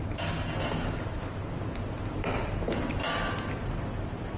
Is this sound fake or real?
real